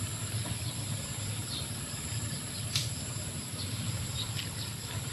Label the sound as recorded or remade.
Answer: remade